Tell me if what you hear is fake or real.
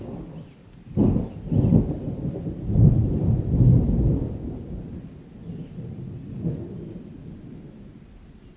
real